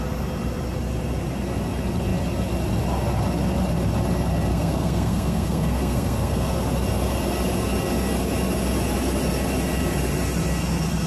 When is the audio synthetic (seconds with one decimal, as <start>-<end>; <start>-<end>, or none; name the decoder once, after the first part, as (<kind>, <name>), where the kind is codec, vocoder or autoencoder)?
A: 4.5-6.5 (codec, SNAC)